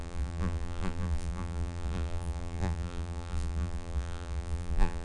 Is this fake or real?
fake